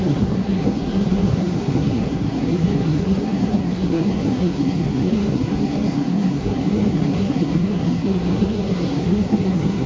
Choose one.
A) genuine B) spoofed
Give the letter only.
B